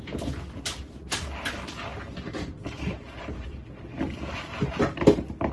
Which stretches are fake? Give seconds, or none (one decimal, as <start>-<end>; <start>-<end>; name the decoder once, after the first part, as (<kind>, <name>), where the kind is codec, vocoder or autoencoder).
none